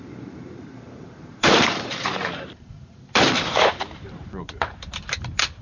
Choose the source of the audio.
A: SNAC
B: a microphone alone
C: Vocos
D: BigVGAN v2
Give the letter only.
D